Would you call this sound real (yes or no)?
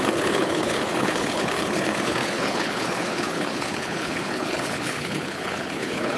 no